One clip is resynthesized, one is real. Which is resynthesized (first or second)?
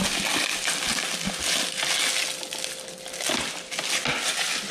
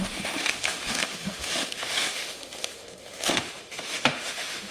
second